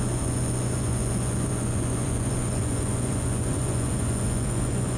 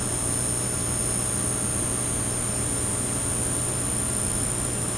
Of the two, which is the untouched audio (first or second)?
second